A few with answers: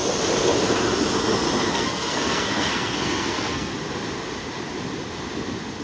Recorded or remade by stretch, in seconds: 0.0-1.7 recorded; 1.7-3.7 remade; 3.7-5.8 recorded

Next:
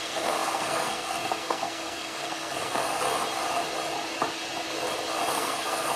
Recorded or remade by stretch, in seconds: 0.0-2.9 remade; 2.9-5.3 recorded; 5.3-6.0 remade